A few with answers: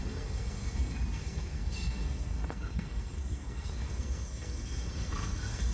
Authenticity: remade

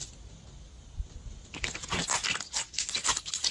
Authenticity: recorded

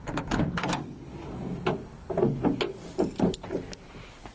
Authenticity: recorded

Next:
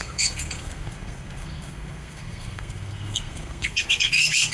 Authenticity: remade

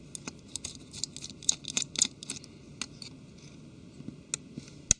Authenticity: recorded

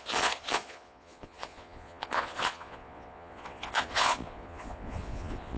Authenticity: remade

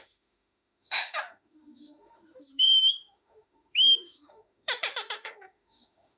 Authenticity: remade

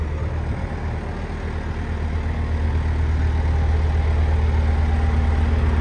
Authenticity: recorded